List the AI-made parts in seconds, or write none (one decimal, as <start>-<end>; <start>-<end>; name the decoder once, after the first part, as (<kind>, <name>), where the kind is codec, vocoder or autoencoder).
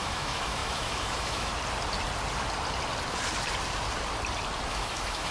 0.0-1.5 (autoencoder, DAC-VAE); 4.7-5.3